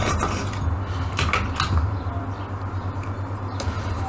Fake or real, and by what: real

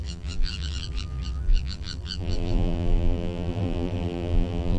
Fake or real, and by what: fake, vocoder, BigVGAN v2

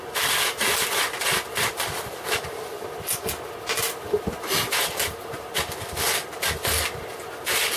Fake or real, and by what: real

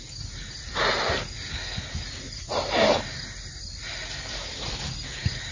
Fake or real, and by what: real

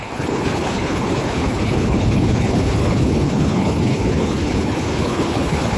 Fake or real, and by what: fake, codec, HILCodec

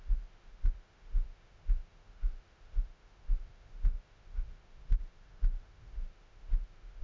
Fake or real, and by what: fake, autoencoder, DAC-VAE